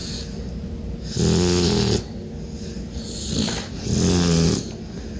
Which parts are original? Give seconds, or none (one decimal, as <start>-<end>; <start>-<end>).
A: 0.0-5.2